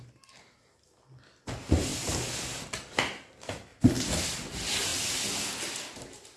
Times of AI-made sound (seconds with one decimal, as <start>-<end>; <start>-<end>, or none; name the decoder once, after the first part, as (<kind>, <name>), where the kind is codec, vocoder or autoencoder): none